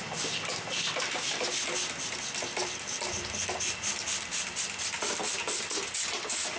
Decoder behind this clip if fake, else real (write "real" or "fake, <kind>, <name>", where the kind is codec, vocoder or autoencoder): real